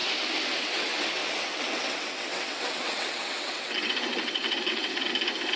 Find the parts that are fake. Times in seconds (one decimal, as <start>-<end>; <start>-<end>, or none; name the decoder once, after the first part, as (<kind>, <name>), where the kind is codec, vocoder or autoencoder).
0.6-5.1 (vocoder, WaveNeXt)